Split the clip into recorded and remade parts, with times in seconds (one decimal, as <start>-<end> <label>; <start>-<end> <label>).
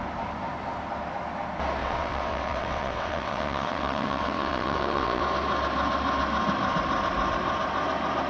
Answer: 0.0-1.8 recorded; 1.8-5.2 remade; 5.2-8.3 recorded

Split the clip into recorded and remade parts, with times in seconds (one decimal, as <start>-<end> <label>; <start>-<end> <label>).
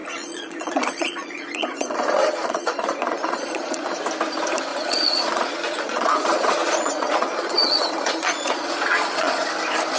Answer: 0.0-4.0 remade; 4.0-4.7 recorded; 4.7-9.5 remade; 9.5-10.0 recorded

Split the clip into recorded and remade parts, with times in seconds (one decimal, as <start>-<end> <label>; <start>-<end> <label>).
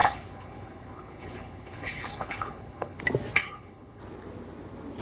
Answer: 0.0-3.0 remade; 3.0-3.4 recorded; 3.4-4.0 remade; 4.0-5.0 recorded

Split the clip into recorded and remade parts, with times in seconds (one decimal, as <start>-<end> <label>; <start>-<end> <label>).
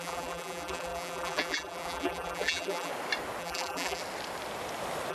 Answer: 0.0-2.9 remade; 2.9-3.4 recorded; 3.4-4.0 remade; 4.0-5.1 recorded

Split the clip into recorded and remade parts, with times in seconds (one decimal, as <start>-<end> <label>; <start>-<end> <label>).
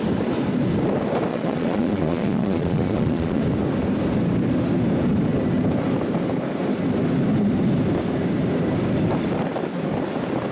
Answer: 0.0-1.3 recorded; 1.3-3.4 remade; 3.4-10.5 recorded